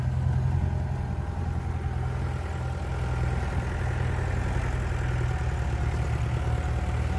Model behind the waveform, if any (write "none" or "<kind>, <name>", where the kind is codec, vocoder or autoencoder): none